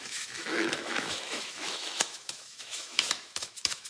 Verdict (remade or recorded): remade